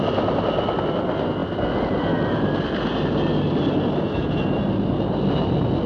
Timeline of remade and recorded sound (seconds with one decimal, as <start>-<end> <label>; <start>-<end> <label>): 0.0-5.9 recorded

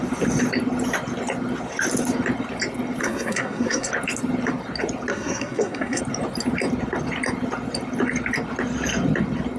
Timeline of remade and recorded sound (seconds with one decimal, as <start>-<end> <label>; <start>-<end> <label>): 0.0-3.0 recorded; 3.0-3.9 remade; 3.9-5.1 recorded; 5.1-6.0 remade; 6.0-9.6 recorded

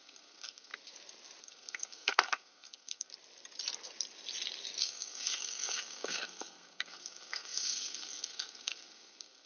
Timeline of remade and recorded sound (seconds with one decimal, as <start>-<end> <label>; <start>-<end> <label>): 0.0-0.7 remade; 0.7-1.4 recorded; 1.4-3.1 remade; 3.1-4.8 recorded; 4.8-9.5 remade

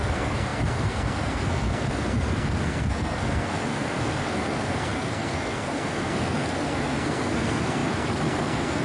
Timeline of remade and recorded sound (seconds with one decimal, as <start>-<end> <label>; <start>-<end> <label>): 0.0-8.8 remade